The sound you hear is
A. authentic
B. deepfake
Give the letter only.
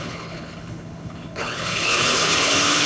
B